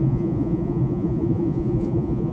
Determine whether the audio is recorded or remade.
remade